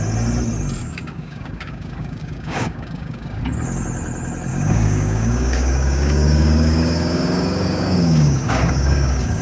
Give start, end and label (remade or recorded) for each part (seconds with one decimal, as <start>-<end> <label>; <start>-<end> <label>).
0.0-0.8 recorded; 0.8-3.4 remade; 3.4-4.5 recorded; 4.5-9.4 remade